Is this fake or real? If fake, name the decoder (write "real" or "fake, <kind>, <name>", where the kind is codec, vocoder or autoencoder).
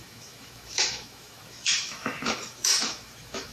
fake, autoencoder, DAC-VAE